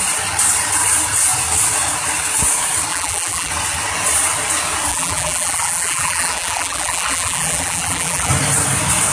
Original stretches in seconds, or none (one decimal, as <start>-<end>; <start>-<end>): 0.0-2.9; 3.5-4.9; 8.3-9.1